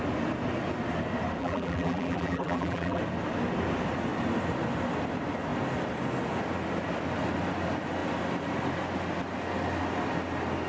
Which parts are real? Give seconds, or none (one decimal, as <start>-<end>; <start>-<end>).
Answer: 0.0-1.4; 3.0-10.7